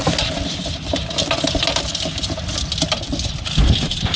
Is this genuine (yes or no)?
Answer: yes